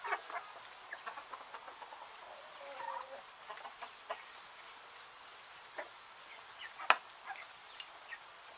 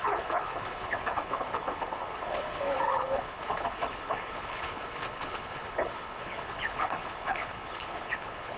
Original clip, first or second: first